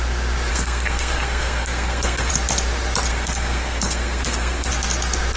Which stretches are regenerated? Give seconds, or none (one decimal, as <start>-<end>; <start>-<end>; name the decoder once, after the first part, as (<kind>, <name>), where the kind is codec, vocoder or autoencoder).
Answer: 0.5-2.3 (codec, SNAC); 3.1-4.7